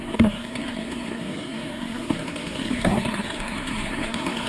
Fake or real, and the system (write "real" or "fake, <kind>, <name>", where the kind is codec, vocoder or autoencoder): fake, codec, SNAC